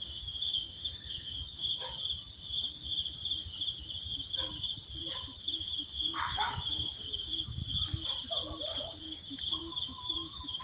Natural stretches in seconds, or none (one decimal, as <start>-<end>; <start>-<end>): 1.7-5.4; 7.6-8.8